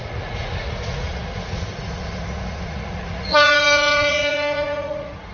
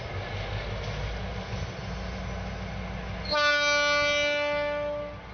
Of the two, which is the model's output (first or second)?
first